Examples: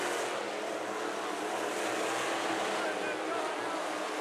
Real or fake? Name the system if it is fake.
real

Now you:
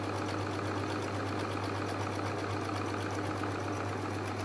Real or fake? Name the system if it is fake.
real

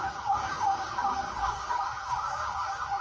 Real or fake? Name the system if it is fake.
fake, codec, DAC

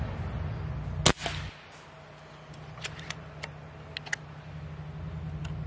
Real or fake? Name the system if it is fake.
real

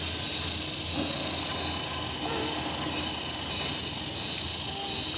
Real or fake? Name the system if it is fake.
real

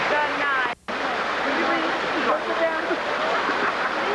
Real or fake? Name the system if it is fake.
real